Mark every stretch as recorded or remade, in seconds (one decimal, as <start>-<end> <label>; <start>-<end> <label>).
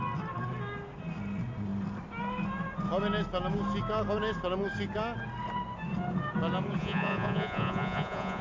0.0-6.8 recorded; 6.8-8.4 remade